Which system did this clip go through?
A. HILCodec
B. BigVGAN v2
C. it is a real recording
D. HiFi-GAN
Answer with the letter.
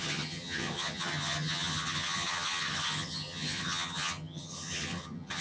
D